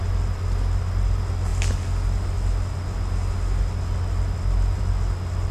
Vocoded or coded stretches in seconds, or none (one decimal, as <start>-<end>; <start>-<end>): none